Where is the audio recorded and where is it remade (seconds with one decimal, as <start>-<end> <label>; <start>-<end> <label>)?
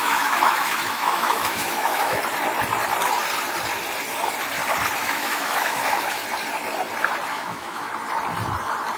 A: 0.0-2.2 remade; 2.2-5.0 recorded; 5.0-6.2 remade; 6.2-7.3 recorded; 7.3-7.9 remade; 7.9-9.0 recorded